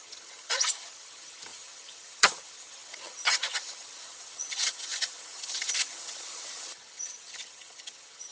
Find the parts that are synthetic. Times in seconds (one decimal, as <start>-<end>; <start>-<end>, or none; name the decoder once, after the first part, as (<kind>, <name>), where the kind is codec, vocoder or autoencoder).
0.0-8.3 (vocoder, HiFi-GAN)